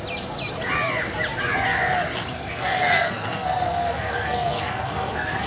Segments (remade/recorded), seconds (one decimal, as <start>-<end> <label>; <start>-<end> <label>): 0.0-2.3 recorded; 2.3-5.5 remade